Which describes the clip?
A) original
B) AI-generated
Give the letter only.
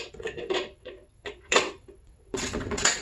B